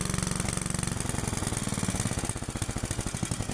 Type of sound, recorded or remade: recorded